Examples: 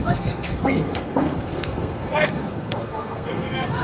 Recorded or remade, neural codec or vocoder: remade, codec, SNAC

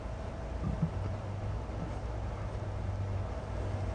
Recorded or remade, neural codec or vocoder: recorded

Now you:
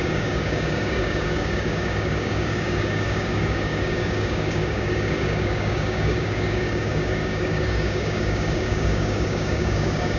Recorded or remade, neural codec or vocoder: remade, codec, DAC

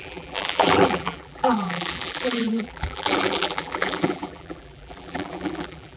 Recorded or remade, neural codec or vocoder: remade, vocoder, BigVGAN v2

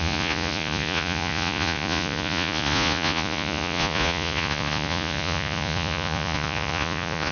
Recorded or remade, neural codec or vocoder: remade, vocoder, Vocos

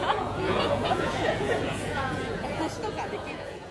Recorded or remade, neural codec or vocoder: remade, vocoder, Vocos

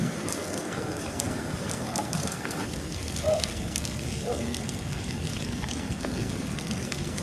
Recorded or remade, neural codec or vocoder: remade, codec, SNAC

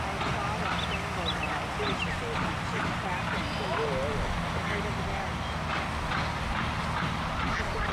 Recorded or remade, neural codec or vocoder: recorded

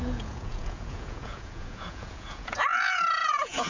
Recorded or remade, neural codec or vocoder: remade, vocoder, Vocos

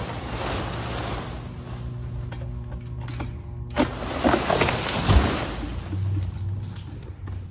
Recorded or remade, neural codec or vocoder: recorded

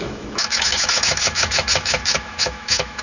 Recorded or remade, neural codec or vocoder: remade, autoencoder, DAC-VAE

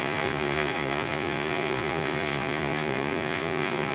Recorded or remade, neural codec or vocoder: remade, vocoder, Vocos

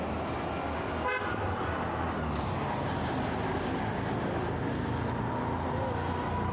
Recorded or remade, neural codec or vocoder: recorded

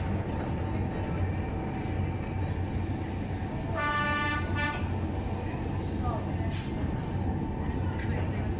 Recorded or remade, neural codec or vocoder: recorded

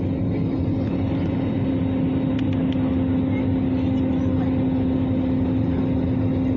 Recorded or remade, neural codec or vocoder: recorded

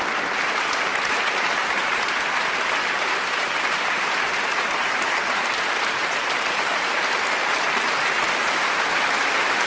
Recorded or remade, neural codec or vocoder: remade, vocoder, BigVGAN v2